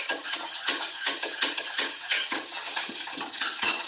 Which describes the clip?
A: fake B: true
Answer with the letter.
A